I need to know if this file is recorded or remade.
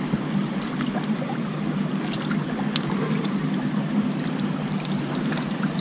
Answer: recorded